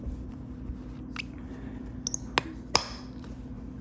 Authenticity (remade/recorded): recorded